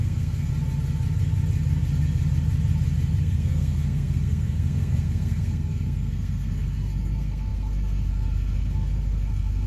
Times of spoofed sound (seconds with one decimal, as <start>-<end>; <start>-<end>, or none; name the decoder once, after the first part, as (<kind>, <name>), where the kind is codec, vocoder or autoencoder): 0.0-0.5 (codec, SNAC); 3.2-9.7